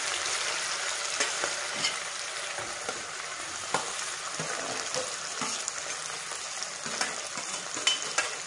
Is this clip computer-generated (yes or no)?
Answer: no